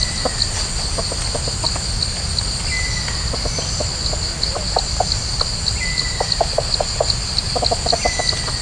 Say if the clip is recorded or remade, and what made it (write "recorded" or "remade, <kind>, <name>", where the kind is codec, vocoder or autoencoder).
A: recorded